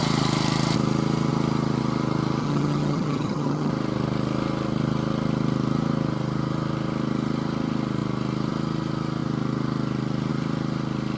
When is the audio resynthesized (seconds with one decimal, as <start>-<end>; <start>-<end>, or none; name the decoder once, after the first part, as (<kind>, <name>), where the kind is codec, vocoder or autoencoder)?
2.4-3.7 (vocoder, HiFi-GAN)